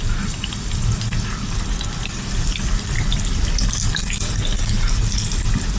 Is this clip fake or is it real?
real